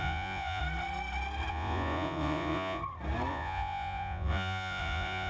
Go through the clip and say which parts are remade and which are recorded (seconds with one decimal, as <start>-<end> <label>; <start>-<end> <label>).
0.0-0.6 remade; 0.6-1.5 recorded; 1.5-2.8 remade; 2.8-3.3 recorded; 3.3-5.3 remade